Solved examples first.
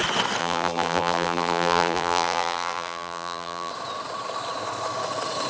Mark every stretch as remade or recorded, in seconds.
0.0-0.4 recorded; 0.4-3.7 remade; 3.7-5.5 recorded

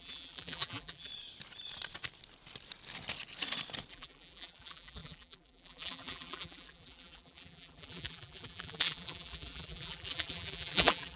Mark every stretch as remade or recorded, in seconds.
0.0-1.1 remade; 1.1-3.9 recorded; 3.9-11.2 remade

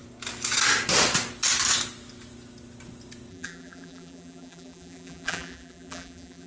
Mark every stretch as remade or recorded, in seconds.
0.0-3.3 recorded; 3.3-6.5 remade